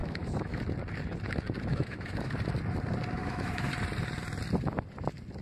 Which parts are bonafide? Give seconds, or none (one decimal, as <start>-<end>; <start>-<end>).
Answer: 0.6-1.7; 2.3-3.2; 3.7-5.4